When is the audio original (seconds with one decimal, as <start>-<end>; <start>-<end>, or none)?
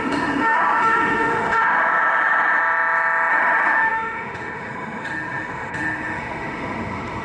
2.6-3.3